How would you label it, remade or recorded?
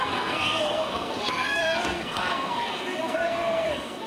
remade